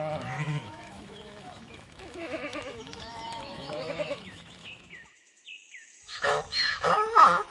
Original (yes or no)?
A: no